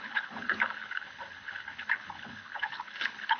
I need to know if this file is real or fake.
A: fake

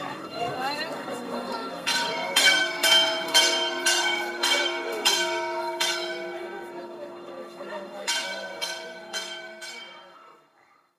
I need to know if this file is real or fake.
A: fake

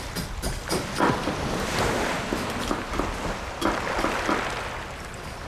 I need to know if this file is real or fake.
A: real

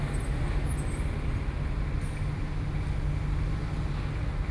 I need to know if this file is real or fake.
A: real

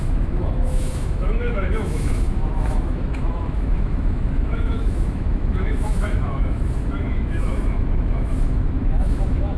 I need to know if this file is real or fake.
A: fake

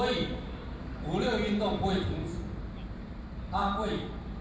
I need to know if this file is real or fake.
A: fake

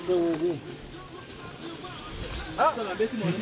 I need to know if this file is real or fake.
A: real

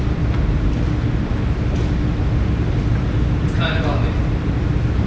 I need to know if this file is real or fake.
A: real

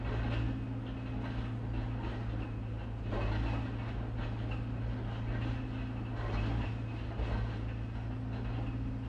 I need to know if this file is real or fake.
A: real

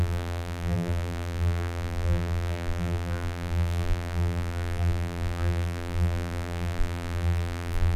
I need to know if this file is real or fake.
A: fake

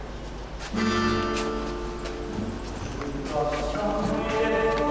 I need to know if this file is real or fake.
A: real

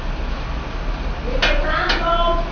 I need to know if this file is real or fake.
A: real